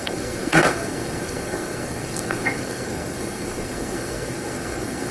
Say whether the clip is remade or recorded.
remade